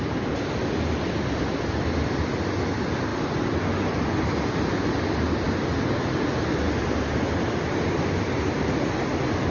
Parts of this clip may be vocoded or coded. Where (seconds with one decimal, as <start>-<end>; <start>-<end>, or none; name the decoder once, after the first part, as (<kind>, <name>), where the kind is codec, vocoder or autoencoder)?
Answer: none